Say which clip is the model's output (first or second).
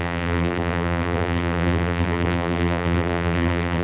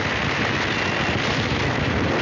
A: first